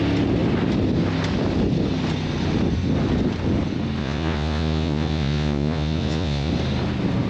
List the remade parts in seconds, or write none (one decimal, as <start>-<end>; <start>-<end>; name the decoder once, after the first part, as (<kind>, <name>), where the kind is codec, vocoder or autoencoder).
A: 4.0-6.5 (vocoder, Vocos)